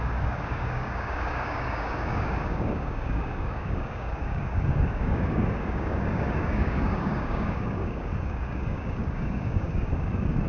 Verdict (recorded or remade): remade